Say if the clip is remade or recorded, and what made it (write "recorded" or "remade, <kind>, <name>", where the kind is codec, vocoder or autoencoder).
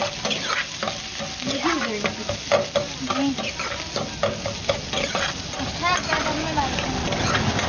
recorded